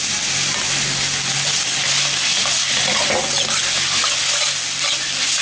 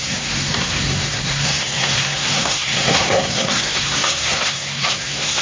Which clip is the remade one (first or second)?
second